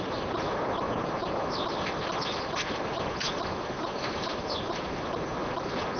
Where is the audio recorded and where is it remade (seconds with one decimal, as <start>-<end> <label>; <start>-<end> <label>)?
0.0-6.0 recorded